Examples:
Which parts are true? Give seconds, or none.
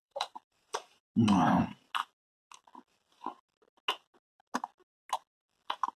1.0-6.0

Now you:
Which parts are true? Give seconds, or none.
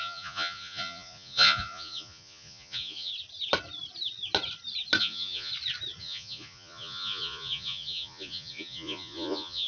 3.1-5.0; 5.5-6.0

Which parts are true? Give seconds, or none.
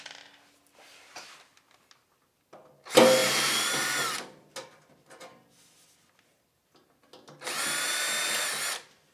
0.0-3.2; 4.5-9.1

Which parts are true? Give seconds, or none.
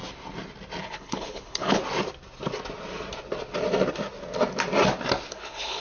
0.0-0.8; 1.8-5.3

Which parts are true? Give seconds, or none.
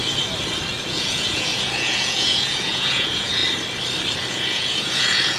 0.0-0.8; 3.4-4.3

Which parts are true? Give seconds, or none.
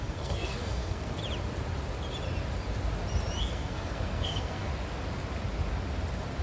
1.2-3.4; 4.7-6.4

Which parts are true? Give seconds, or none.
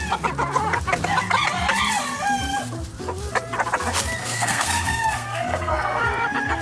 0.0-4.2; 6.0-6.6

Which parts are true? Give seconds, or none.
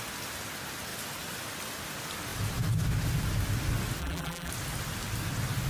0.0-4.0; 4.5-5.7